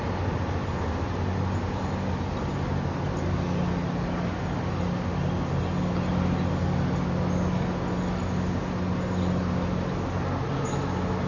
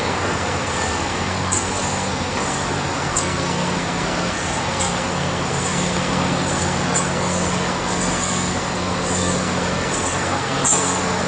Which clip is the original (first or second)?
first